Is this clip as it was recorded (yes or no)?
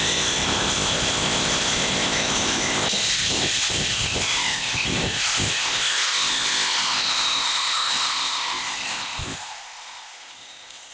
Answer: no